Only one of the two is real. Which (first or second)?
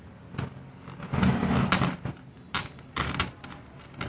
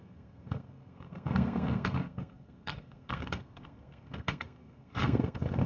first